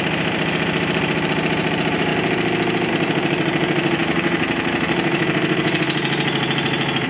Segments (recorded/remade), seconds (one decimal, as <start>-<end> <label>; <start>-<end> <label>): 0.0-2.1 remade; 2.1-2.9 recorded; 2.9-7.1 remade